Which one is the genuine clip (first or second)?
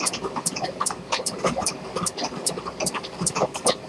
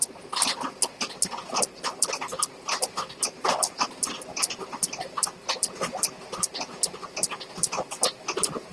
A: second